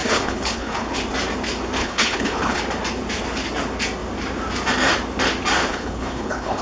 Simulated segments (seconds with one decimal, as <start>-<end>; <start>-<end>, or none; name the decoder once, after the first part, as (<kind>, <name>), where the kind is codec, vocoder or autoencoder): 0.0-1.0 (codec, HILCodec); 1.8-2.6; 5.7-6.6